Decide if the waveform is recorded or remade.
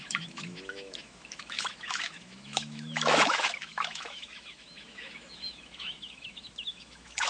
remade